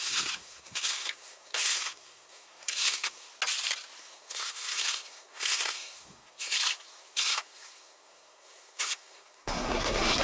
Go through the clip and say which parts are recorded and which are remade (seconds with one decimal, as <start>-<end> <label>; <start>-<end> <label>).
0.0-3.3 remade; 3.3-4.0 recorded; 4.0-10.2 remade